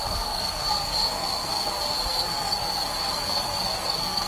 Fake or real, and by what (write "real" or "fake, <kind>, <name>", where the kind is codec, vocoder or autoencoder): fake, codec, SNAC